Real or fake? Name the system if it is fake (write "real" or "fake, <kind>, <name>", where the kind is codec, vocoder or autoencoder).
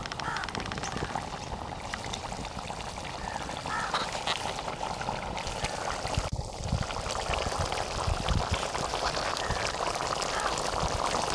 real